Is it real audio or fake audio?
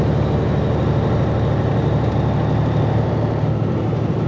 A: real